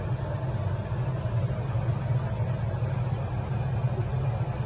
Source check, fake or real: real